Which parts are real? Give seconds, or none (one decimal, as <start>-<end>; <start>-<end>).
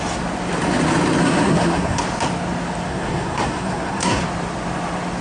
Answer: 0.0-1.2; 2.0-2.9; 4.2-5.2